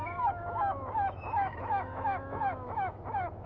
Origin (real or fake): fake